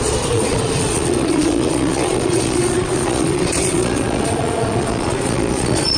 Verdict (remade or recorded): remade